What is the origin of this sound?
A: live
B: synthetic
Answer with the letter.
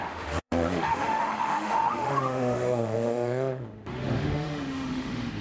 B